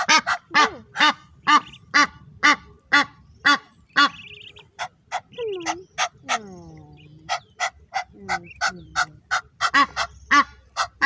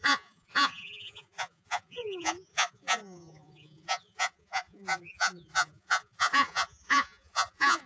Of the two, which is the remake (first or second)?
second